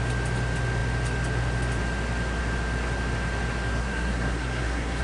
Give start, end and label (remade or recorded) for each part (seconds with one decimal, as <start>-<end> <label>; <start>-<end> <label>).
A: 0.0-3.8 recorded; 3.8-5.0 remade

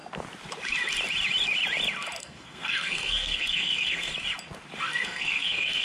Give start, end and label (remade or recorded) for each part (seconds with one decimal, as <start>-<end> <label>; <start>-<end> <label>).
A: 0.0-2.2 recorded; 2.2-4.1 remade; 4.1-4.8 recorded; 4.8-5.8 remade

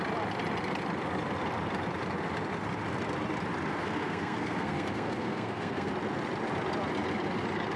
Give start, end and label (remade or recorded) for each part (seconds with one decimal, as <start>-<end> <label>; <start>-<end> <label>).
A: 0.0-3.7 recorded; 3.7-5.9 remade; 5.9-7.8 recorded

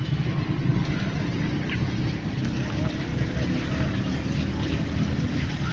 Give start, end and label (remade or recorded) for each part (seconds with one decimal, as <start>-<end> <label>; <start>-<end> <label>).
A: 0.0-5.7 recorded

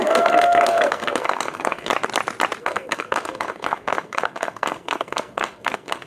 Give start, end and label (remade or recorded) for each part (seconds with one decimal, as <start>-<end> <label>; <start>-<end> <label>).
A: 0.0-1.9 remade; 1.9-2.6 recorded; 2.6-6.1 remade

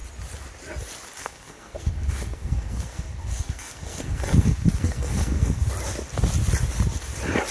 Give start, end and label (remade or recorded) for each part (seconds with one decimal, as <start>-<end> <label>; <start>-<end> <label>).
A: 0.0-1.2 recorded; 1.2-5.7 remade; 5.7-7.5 recorded